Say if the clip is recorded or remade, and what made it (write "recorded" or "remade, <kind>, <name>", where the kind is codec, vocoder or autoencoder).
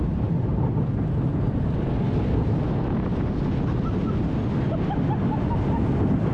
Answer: recorded